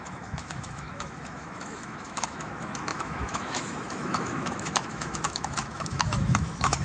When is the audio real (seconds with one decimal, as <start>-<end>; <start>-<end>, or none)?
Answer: none